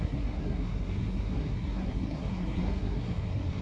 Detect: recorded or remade remade